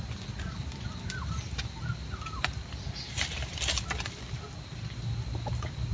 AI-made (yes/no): no